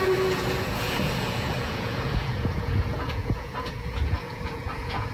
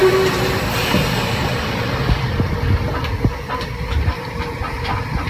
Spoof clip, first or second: first